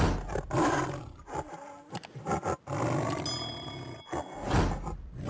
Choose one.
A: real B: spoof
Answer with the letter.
A